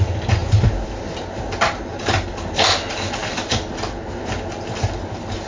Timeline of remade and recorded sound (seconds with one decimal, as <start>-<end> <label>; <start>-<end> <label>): 0.0-5.5 recorded